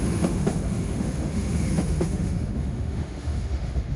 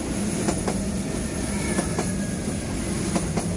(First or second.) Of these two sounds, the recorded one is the second